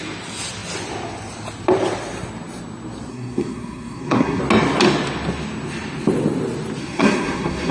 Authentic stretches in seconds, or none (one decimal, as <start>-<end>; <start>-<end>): 0.0-3.1; 4.4-6.8